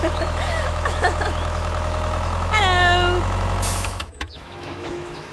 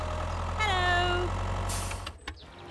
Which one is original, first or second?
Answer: second